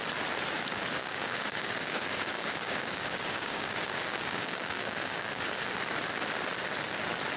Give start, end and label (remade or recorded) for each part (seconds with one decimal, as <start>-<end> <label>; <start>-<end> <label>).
0.0-1.0 recorded; 1.0-5.4 remade; 5.4-7.4 recorded